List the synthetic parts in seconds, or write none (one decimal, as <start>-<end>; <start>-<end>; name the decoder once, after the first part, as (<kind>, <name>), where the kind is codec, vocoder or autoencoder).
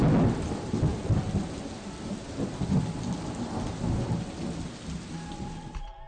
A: none